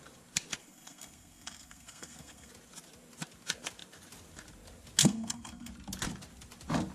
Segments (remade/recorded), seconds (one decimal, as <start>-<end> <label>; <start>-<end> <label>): 0.0-0.6 recorded; 0.6-2.5 remade; 2.5-5.0 recorded; 5.0-5.7 remade; 5.7-6.9 recorded